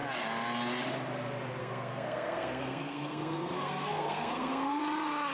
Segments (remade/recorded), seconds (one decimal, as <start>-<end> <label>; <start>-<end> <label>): 0.0-1.6 recorded; 1.6-4.8 remade; 4.8-5.3 recorded